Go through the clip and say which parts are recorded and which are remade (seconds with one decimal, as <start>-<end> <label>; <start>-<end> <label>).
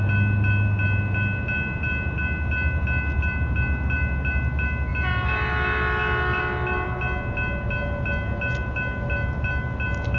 0.0-10.2 recorded